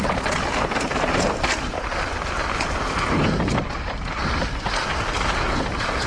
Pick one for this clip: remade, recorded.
recorded